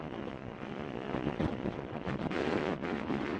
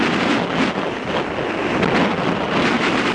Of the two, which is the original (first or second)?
second